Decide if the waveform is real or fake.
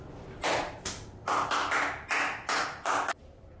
real